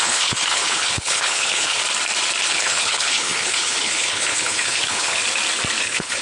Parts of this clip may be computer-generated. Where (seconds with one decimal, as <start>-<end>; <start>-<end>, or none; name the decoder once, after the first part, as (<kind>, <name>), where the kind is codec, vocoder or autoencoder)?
0.0-1.8 (codec, HILCodec); 2.5-5.2; 5.8-6.2